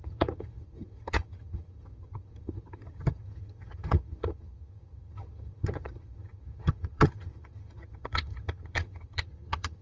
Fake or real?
fake